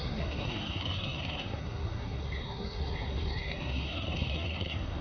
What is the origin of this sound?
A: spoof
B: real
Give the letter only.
A